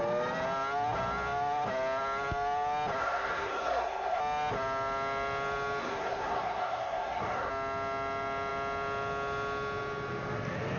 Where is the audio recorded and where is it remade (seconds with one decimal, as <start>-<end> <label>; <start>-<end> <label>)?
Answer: 0.0-3.0 recorded; 3.0-4.2 remade; 4.2-5.8 recorded; 5.8-7.5 remade; 7.5-10.8 recorded